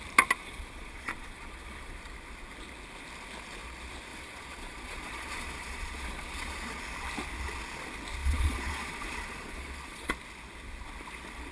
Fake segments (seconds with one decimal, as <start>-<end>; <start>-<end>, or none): 0.4-2.0; 4.1-6.8; 8.2-10.1